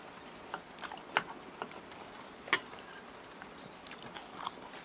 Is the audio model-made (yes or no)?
no